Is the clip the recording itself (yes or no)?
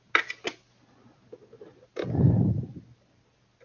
yes